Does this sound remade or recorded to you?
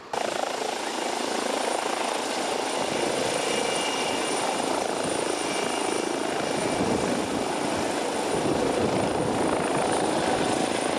recorded